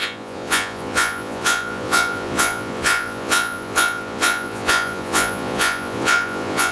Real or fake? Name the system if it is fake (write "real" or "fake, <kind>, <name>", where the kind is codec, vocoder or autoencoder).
fake, vocoder, Vocos